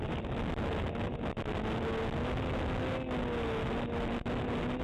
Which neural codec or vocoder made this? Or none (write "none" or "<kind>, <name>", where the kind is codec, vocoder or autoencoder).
none